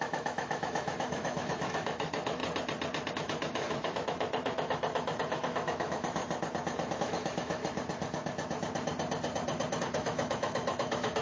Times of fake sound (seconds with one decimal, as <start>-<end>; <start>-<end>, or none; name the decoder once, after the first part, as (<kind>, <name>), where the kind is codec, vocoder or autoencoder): 0.0-2.4 (autoencoder, DAC-VAE); 3.1-6.2; 7.0-7.6; 9.8-11.2